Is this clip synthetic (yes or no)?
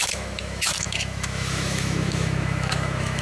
yes